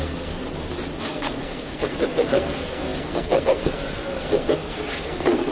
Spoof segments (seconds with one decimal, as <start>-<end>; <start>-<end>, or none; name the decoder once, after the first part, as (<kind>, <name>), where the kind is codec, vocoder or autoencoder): 0.0-0.4 (codec, SNAC); 1.0-5.5